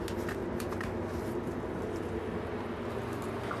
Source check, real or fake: real